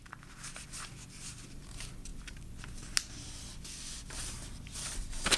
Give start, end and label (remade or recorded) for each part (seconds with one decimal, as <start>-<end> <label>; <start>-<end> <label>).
0.0-5.4 recorded